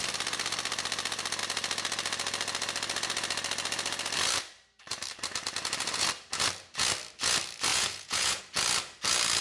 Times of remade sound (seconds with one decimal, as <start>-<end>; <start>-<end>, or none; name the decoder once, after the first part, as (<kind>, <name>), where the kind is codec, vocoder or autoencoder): 7.7-8.4 (vocoder, Vocos)